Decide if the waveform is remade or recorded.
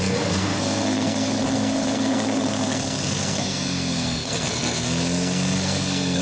remade